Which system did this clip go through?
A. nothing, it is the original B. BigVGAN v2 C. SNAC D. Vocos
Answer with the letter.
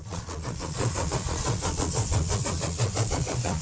D